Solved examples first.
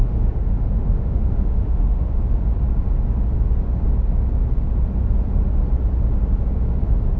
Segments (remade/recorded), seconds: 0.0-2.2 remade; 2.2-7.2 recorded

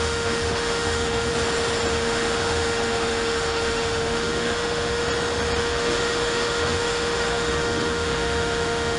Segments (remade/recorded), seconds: 0.0-1.3 remade; 1.3-1.9 recorded; 1.9-5.0 remade; 5.0-5.6 recorded; 5.6-9.0 remade

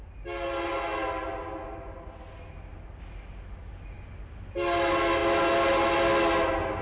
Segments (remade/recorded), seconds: 0.0-6.8 recorded

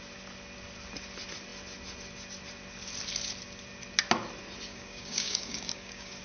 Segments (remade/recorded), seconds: 0.0-4.7 recorded; 4.7-6.2 remade

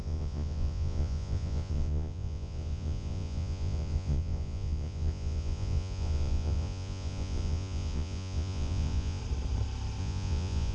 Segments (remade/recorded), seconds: 0.0-9.2 remade; 9.2-10.0 recorded; 10.0-10.7 remade

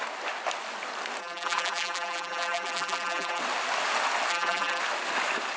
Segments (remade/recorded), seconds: 0.0-1.2 recorded; 1.2-3.4 remade; 3.4-4.3 recorded; 4.3-4.8 remade; 4.8-5.6 recorded